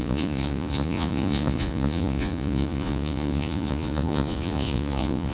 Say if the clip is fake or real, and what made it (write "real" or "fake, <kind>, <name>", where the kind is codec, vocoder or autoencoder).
fake, vocoder, Vocos